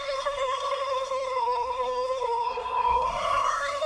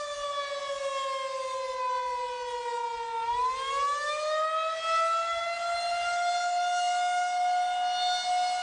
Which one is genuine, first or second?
second